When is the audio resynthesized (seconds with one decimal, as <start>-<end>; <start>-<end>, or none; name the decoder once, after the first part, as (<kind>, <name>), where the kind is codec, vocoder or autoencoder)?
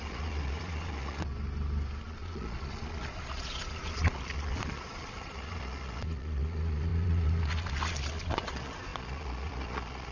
0.0-1.3 (vocoder, Vocos); 2.0-10.1